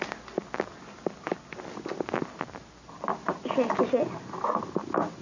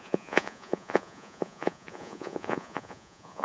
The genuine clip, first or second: first